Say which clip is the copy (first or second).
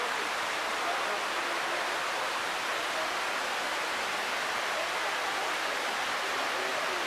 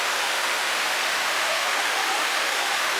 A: second